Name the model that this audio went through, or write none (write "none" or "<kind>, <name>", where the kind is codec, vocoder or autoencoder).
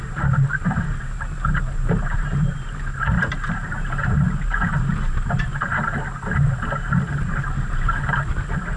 vocoder, BigVGAN v2